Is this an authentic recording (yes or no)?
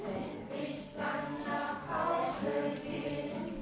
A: no